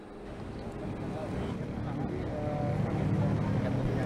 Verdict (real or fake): real